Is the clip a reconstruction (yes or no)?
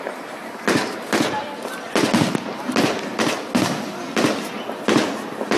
no